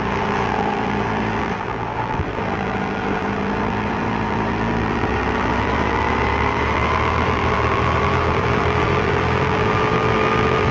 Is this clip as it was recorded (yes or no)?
no